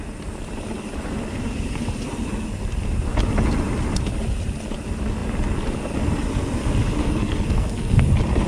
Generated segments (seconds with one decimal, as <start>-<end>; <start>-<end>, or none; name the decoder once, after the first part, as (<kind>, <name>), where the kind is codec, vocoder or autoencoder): 7.0-8.0 (codec, SNAC)